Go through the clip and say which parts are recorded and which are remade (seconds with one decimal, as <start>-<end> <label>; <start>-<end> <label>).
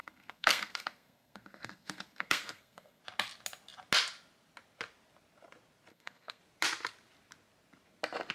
0.0-3.0 remade; 3.0-5.9 recorded; 5.9-6.4 remade; 6.4-8.3 recorded